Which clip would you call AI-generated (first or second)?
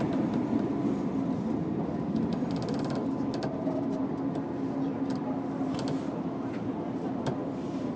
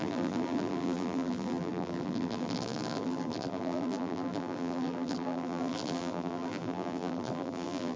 second